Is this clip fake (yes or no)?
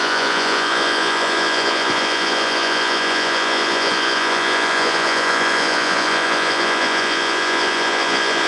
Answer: yes